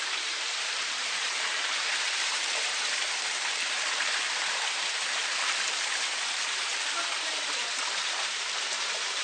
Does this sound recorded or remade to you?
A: remade